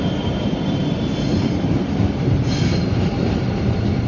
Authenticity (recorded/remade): remade